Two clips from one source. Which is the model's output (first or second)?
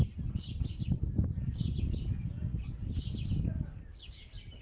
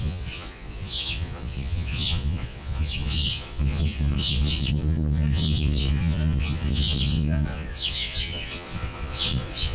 second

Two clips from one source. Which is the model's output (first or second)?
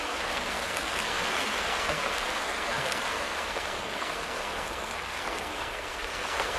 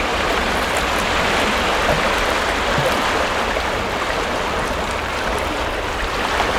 first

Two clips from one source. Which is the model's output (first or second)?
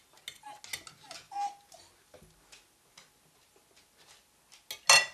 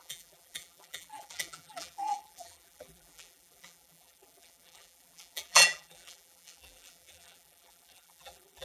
second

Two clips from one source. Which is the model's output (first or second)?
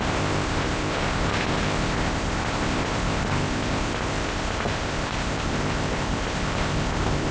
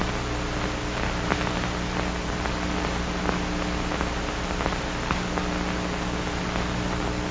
first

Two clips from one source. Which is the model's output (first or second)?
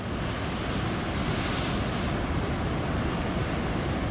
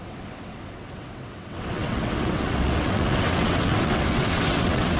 second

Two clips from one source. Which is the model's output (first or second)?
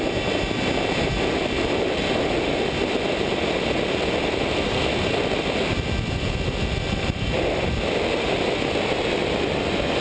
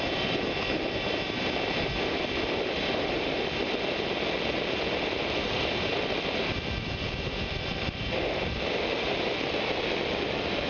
second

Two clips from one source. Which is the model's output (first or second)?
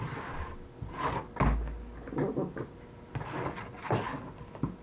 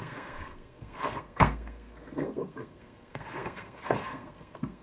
second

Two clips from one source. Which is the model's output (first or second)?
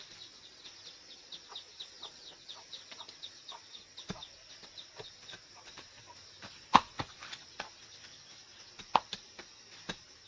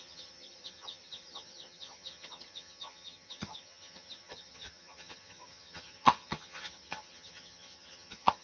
second